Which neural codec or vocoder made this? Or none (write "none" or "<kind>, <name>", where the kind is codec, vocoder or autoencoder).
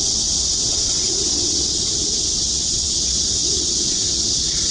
vocoder, WaveNeXt